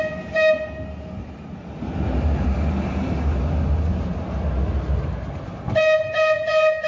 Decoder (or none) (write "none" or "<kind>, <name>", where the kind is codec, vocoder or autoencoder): none